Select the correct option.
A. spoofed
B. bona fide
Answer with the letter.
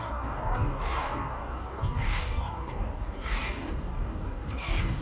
A